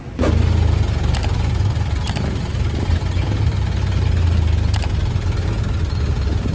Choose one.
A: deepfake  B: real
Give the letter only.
B